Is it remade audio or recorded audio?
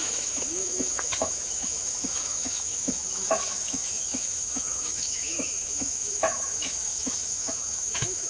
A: remade